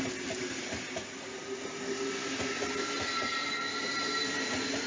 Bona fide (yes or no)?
yes